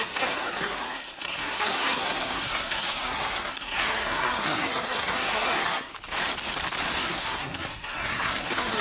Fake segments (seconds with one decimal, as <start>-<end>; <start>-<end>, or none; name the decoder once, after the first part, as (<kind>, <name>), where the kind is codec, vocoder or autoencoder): 0.0-5.9 (codec, SNAC); 7.0-8.8